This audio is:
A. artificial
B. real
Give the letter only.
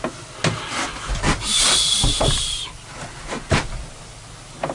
B